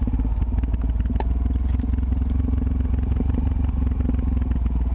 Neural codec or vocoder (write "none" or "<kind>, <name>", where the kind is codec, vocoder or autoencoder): none